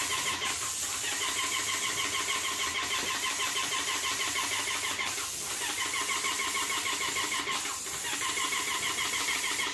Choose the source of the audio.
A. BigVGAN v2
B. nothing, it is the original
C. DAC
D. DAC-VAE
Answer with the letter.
A